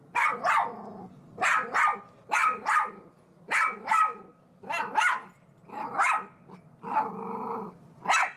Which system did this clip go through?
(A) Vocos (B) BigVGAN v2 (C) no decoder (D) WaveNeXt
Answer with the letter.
C